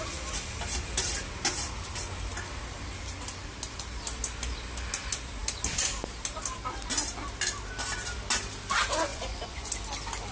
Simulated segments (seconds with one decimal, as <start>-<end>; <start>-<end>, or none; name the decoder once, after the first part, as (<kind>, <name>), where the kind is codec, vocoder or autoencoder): 9.1-9.7 (vocoder, Vocos)